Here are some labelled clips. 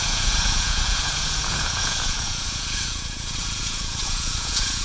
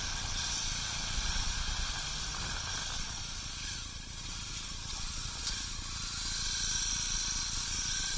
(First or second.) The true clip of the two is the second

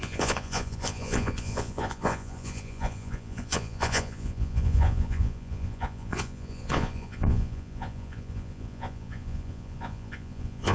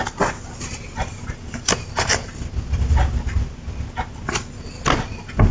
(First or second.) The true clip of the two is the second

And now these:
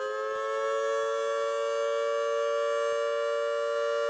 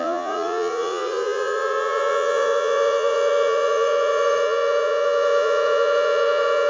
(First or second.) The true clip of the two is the first